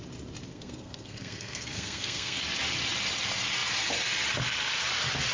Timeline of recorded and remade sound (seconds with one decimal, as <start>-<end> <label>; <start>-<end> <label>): 0.0-0.5 recorded; 0.5-2.4 remade; 2.4-5.3 recorded